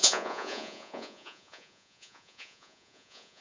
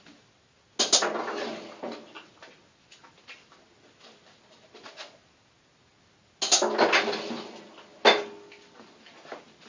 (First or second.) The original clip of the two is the second